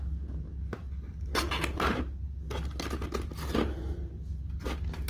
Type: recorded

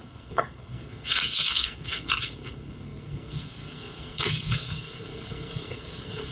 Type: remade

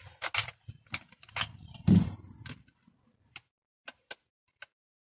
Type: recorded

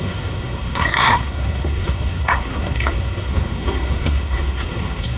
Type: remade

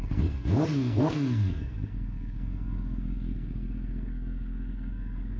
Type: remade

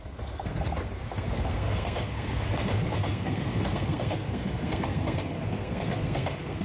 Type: remade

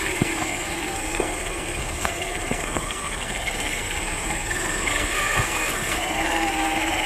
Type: remade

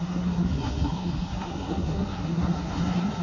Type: remade